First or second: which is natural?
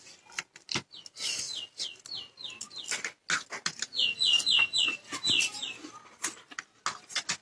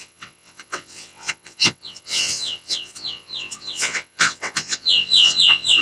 first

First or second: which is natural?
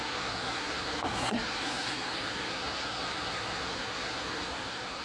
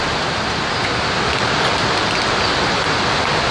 second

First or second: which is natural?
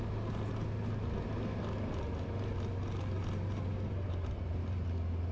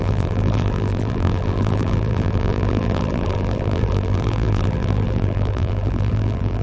first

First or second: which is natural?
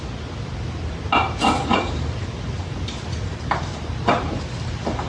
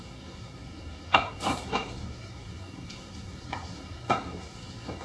first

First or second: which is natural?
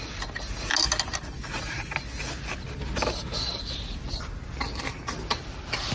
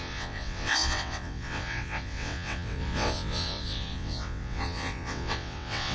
first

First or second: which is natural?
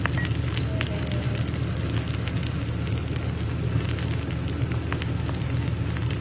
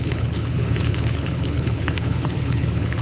first